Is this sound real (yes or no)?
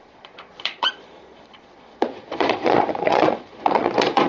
no